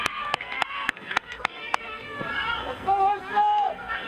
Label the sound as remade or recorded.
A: remade